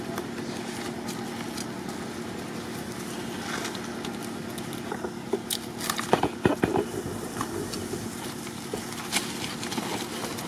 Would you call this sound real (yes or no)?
yes